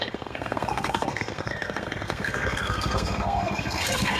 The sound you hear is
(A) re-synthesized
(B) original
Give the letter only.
A